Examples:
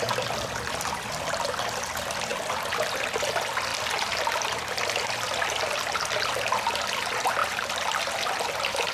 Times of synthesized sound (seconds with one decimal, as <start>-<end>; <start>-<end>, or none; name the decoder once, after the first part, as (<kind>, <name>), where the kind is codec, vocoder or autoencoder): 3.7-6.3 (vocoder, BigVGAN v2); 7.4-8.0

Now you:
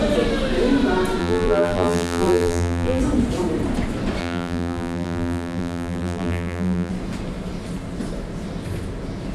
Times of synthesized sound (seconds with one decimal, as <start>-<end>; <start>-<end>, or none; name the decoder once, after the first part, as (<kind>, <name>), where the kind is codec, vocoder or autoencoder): 1.2-3.0 (vocoder, BigVGAN v2); 4.2-6.9

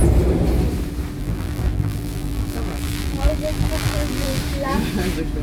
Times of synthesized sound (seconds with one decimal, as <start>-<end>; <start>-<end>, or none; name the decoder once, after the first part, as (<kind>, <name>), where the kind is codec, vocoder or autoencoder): 1.2-4.4 (vocoder, BigVGAN v2)